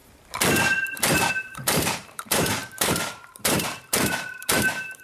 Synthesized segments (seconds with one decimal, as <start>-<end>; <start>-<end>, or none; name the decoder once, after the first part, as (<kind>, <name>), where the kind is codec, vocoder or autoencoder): 1.3-5.0 (vocoder, BigVGAN v2)

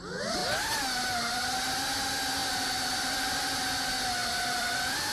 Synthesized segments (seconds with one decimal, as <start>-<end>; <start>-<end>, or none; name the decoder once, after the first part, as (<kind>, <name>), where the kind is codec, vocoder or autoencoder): 2.4-3.6 (vocoder, BigVGAN v2); 4.2-5.1

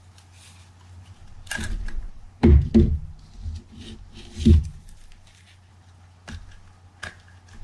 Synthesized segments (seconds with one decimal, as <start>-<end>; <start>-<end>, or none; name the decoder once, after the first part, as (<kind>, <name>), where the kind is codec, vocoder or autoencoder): 1.2-2.7 (vocoder, BigVGAN v2); 4.6-5.7

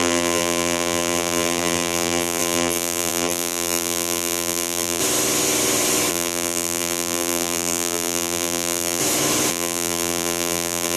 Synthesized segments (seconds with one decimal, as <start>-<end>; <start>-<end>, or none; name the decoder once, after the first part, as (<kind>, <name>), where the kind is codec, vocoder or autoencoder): 0.0-5.0 (vocoder, BigVGAN v2); 6.1-9.0; 9.5-11.0

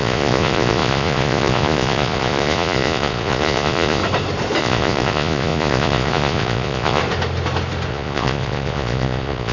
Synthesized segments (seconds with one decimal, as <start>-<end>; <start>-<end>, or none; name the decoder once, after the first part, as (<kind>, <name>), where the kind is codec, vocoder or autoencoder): 0.0-4.0 (vocoder, Vocos); 4.6-7.0; 7.9-9.5

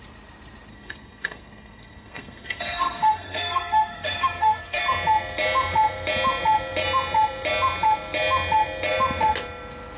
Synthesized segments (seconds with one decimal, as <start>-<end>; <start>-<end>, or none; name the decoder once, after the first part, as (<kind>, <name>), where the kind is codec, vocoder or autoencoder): 0.7-4.8 (codec, SNAC)

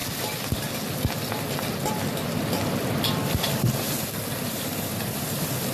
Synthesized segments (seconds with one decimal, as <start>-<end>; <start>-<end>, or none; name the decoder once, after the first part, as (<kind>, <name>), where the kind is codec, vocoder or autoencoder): none